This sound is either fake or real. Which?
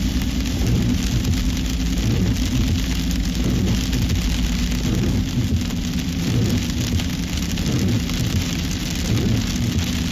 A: real